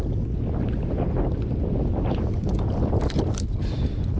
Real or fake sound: real